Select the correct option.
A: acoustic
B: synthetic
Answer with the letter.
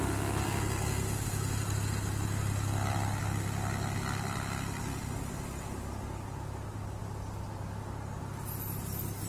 A